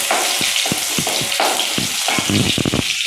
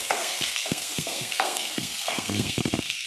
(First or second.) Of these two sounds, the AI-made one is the second